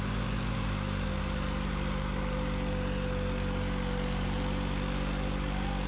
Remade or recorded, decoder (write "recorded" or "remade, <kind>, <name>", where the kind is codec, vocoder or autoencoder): recorded